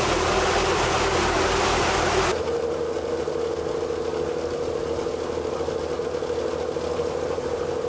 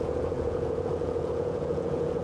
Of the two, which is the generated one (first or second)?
second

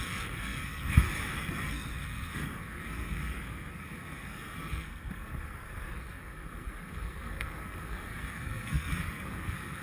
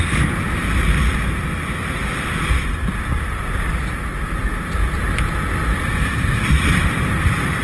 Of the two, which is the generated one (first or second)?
first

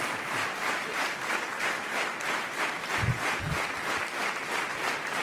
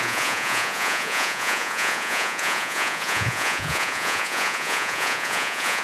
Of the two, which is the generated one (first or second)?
second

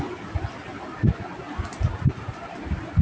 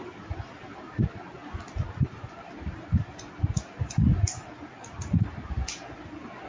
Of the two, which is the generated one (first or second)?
first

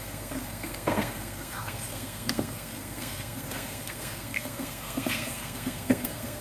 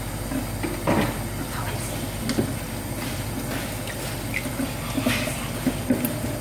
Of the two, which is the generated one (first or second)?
first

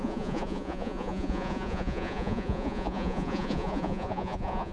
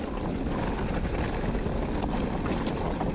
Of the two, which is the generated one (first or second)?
first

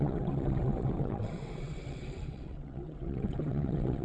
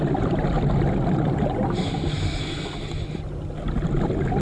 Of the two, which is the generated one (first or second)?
first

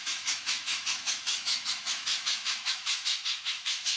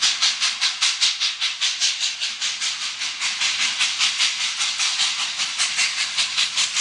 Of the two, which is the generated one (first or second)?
first